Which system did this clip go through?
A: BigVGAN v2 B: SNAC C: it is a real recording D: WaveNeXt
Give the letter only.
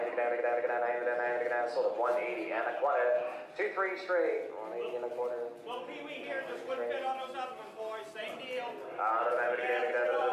C